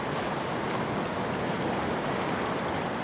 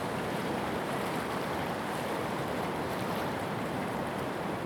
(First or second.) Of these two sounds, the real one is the first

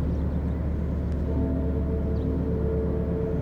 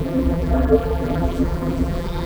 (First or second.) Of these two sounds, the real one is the first